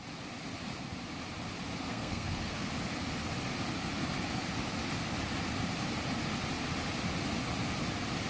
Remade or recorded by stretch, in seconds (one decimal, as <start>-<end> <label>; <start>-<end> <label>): 0.0-1.9 recorded; 1.9-2.7 remade; 2.7-8.3 recorded